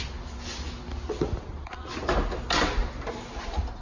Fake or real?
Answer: real